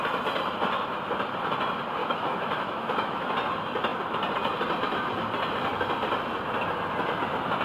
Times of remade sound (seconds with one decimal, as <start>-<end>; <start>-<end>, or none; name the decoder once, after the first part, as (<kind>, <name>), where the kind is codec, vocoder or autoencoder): 2.0-3.3 (autoencoder, DAC-VAE)